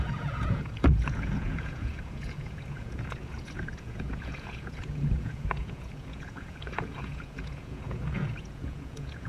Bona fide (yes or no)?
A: no